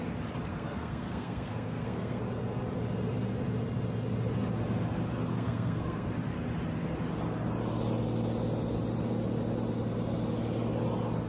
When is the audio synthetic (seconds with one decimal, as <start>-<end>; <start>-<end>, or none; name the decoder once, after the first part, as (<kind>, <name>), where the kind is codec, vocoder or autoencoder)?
0.5-2.2 (codec, SNAC); 5.3-6.1